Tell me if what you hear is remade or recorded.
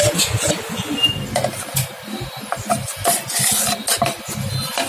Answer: recorded